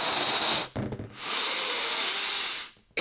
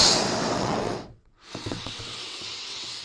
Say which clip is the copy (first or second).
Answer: second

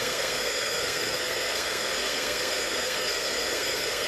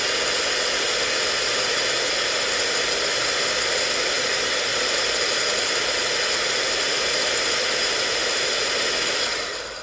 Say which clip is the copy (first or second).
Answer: first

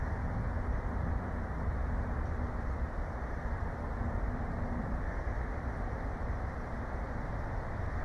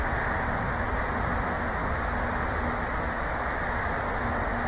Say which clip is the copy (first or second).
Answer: first